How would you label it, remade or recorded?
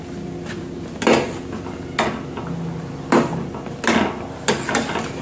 recorded